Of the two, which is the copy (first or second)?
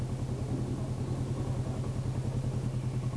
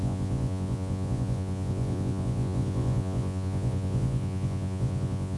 second